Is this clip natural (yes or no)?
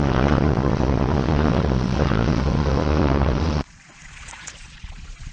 no